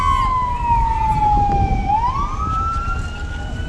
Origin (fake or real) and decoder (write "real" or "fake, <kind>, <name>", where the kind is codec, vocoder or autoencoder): real